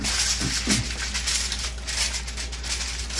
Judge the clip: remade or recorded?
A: recorded